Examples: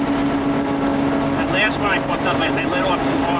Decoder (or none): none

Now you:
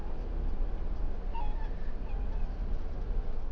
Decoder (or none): none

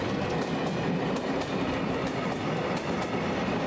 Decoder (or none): none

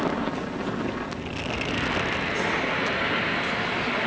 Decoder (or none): none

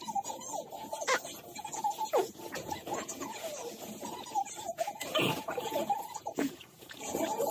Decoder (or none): vocoder, Vocos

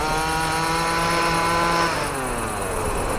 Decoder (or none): none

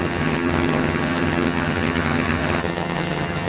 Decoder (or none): vocoder, HiFi-GAN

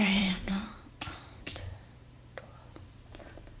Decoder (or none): vocoder, BigVGAN v2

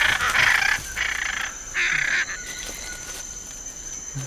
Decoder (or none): none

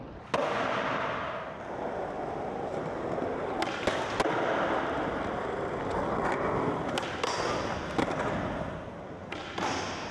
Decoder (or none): none